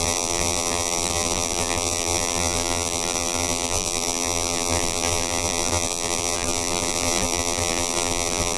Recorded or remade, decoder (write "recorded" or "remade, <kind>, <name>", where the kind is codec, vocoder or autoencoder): remade, vocoder, BigVGAN v2